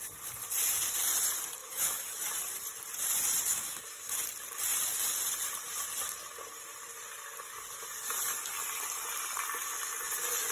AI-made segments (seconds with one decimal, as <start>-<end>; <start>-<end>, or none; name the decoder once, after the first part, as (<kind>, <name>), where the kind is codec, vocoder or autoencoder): 1.6-2.3 (autoencoder, DAC-VAE); 3.5-4.2